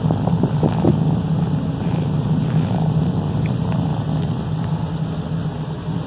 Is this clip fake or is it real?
real